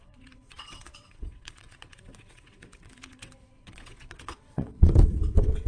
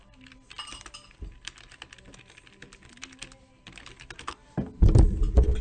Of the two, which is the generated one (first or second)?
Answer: first